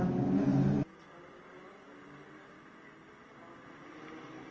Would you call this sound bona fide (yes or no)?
yes